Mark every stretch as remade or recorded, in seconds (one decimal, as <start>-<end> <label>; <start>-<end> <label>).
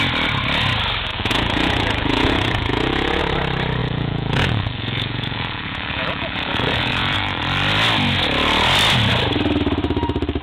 0.0-1.1 recorded; 1.1-3.2 remade; 3.2-3.8 recorded; 3.8-7.4 remade; 7.4-10.4 recorded